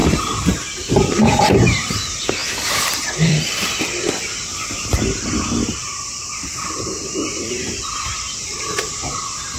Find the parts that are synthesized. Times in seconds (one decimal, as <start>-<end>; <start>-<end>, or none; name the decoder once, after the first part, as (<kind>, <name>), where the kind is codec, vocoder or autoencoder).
0.0-2.0 (vocoder, BigVGAN v2); 2.4-3.8; 5.8-7.0; 8.4-8.9